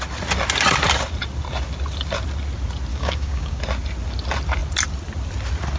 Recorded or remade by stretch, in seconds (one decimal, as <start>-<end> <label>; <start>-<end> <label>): 0.0-2.9 recorded; 2.9-3.6 remade; 3.6-5.8 recorded